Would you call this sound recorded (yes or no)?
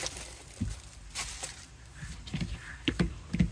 yes